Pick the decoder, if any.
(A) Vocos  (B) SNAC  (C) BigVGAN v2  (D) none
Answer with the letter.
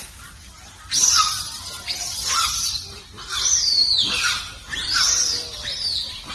C